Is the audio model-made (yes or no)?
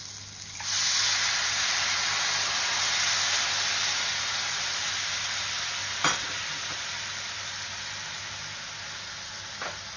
no